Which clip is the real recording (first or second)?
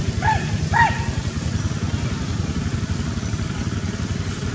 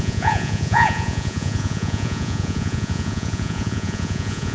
first